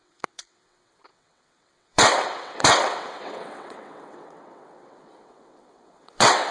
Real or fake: fake